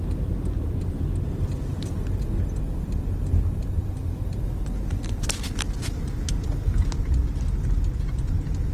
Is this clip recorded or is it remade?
recorded